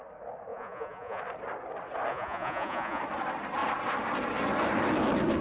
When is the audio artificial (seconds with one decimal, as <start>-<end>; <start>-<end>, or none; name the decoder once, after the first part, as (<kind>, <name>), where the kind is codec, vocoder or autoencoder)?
0.5-1.2 (vocoder, Vocos); 2.1-3.0